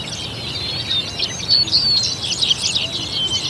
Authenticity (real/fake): real